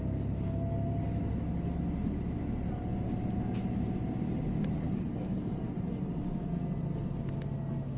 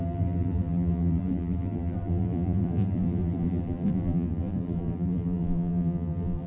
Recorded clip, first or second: first